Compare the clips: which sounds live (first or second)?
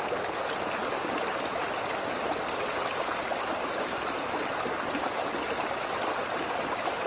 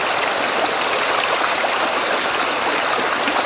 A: first